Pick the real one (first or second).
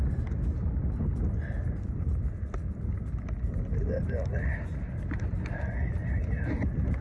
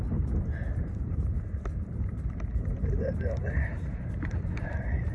first